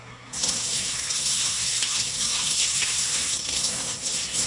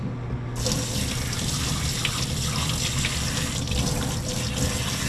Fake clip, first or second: first